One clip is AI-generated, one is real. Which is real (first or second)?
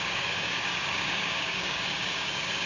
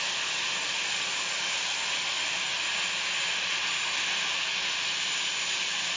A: second